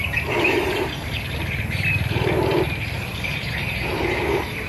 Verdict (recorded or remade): remade